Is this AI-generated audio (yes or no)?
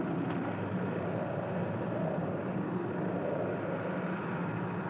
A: no